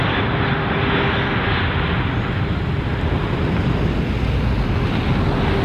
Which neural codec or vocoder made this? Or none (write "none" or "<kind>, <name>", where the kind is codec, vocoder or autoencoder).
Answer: none